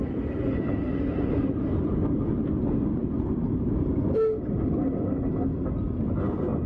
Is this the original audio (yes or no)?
yes